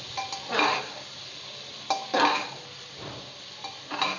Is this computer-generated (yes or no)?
no